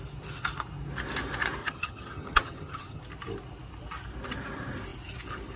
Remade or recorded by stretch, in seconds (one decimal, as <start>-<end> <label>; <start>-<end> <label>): 0.0-1.6 recorded; 1.6-3.0 remade; 3.0-5.6 recorded